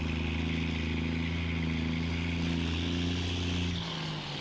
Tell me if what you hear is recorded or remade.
recorded